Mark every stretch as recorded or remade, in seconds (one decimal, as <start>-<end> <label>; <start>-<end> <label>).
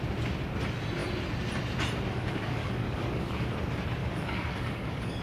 0.0-2.1 recorded; 2.1-3.5 remade; 3.5-4.0 recorded; 4.0-5.2 remade